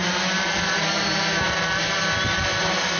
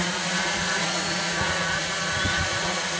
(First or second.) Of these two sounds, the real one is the first